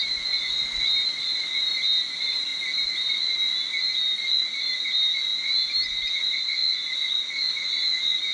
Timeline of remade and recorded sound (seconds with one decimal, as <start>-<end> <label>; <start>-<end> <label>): 0.0-8.3 recorded

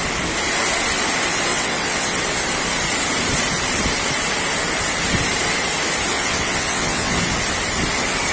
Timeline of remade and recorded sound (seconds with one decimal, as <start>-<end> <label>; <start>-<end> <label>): 0.0-1.5 recorded; 1.5-2.2 remade; 2.2-6.1 recorded; 6.1-7.2 remade; 7.2-8.3 recorded

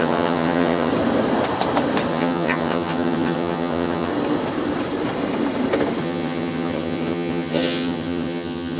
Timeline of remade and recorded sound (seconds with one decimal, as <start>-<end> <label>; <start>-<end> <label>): 0.0-0.9 remade; 0.9-2.1 recorded; 2.1-4.1 remade; 4.1-6.0 recorded; 6.0-8.8 remade

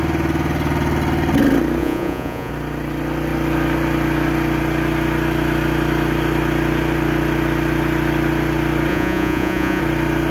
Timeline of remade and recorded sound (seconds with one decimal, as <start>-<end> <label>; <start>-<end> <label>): 0.0-1.8 recorded; 1.8-2.5 remade; 2.5-8.9 recorded; 8.9-9.8 remade; 9.8-10.3 recorded

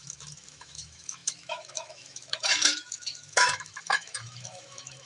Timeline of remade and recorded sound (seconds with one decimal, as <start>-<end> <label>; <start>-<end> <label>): 0.0-5.1 remade

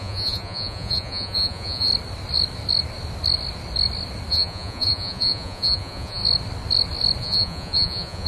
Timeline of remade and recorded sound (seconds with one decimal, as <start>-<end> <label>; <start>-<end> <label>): 0.0-1.9 remade; 1.9-4.3 recorded; 4.3-6.2 remade; 6.2-7.2 recorded; 7.2-8.3 remade

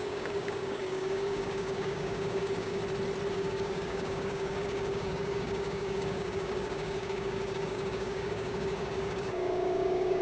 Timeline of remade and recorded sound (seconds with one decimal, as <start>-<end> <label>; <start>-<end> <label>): 0.0-2.8 remade; 2.8-3.3 recorded; 3.3-10.2 remade